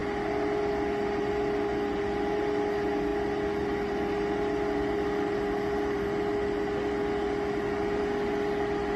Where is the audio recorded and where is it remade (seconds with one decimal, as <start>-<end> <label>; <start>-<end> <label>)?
0.0-9.0 recorded